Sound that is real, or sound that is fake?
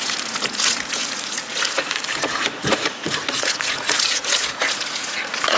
fake